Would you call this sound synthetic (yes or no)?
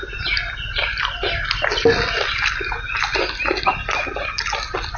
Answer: no